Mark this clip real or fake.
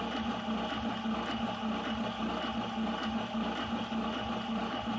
real